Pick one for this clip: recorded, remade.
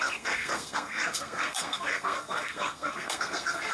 remade